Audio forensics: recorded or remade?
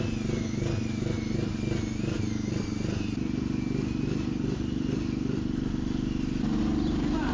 recorded